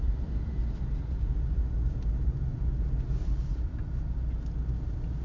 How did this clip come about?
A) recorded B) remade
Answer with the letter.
A